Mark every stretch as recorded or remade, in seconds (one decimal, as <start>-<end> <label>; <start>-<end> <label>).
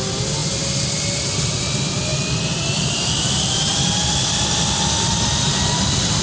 0.0-6.2 recorded